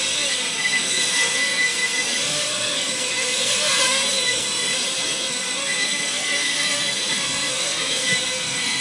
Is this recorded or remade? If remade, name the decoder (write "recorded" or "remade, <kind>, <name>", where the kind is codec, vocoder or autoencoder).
remade, codec, SNAC